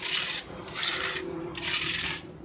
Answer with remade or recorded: remade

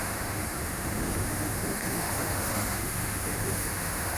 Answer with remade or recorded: remade